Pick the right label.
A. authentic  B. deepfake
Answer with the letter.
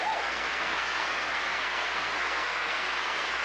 B